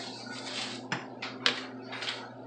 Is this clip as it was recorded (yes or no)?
yes